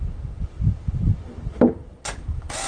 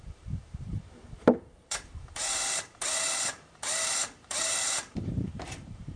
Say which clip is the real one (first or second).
first